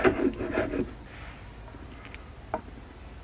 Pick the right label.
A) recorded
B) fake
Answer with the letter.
A